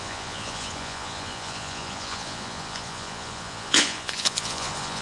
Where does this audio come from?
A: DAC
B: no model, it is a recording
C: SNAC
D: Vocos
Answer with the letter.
D